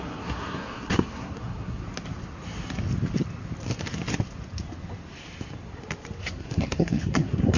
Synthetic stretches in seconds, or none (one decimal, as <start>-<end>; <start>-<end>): 0.0-1.8; 6.2-7.6